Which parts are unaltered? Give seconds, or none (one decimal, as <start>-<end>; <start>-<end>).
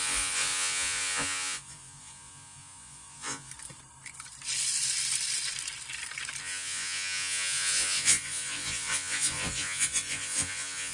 3.5-6.4